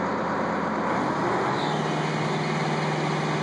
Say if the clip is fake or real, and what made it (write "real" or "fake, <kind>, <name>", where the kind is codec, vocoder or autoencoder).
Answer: real